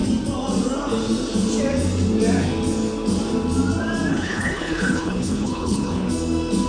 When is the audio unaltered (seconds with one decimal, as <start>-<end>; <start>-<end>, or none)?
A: 0.0-4.1; 6.1-6.7